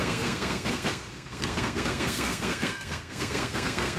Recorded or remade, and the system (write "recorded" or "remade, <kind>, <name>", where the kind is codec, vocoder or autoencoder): remade, codec, SNAC